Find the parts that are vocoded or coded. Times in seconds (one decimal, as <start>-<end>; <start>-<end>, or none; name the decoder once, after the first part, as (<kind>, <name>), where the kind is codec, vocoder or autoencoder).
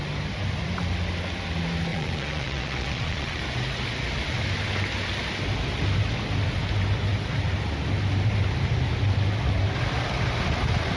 1.9-3.4 (vocoder, Vocos)